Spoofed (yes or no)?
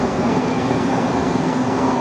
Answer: yes